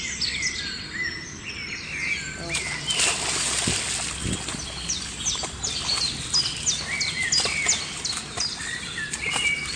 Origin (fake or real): real